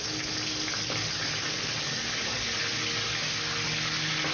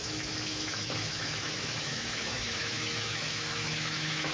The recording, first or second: first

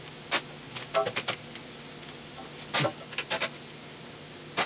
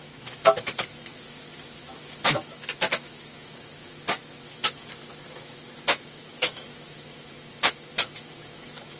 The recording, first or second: first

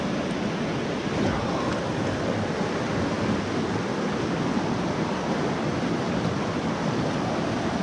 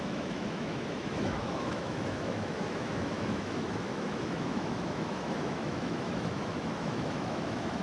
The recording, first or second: first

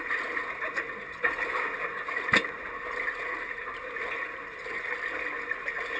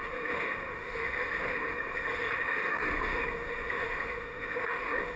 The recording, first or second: first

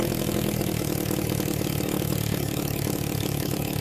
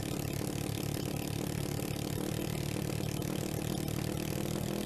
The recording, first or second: second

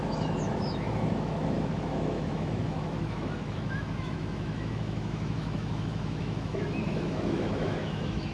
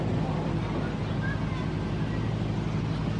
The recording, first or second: second